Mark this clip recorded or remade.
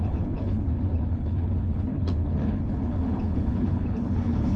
remade